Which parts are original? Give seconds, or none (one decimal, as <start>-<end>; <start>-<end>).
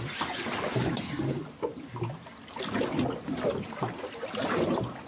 0.0-5.1